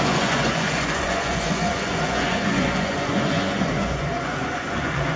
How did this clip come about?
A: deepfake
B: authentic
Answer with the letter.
A